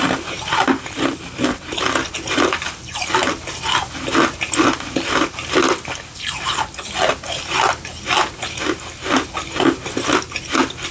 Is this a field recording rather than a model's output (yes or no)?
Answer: yes